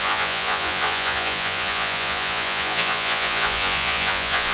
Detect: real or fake fake